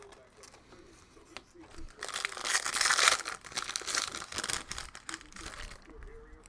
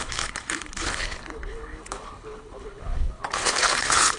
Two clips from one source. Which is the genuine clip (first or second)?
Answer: first